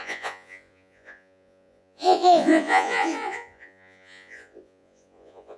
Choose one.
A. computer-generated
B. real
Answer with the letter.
A